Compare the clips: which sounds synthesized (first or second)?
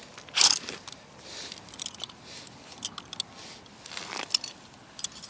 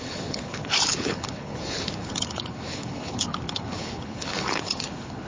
second